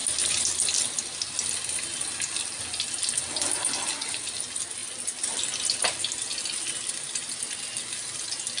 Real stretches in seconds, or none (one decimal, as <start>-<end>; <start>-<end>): 0.0-4.8; 5.4-8.6